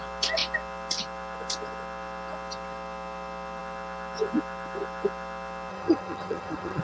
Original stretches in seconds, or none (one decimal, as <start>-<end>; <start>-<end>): 0.0-5.7